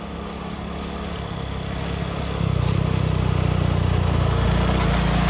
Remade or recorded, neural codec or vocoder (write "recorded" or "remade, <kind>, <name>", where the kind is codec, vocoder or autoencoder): recorded